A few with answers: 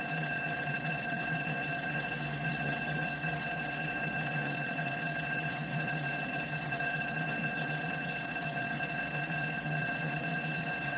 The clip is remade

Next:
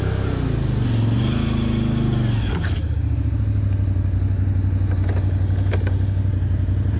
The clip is recorded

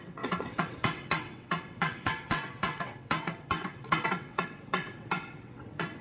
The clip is remade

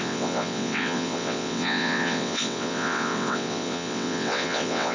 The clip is remade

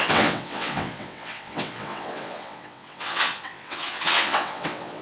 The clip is remade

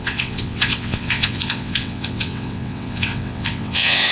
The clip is remade